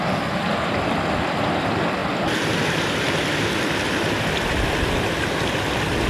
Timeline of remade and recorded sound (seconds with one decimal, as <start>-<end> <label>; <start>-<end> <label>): 0.0-6.1 recorded